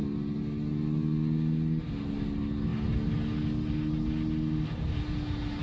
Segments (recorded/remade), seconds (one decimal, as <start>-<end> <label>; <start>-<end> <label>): 0.0-5.6 recorded